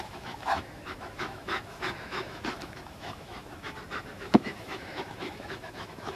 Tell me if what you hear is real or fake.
fake